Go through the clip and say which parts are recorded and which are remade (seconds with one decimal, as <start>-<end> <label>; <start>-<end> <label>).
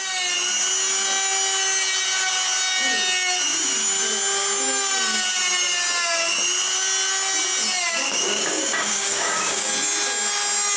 0.0-7.9 recorded; 7.9-9.7 remade; 9.7-10.8 recorded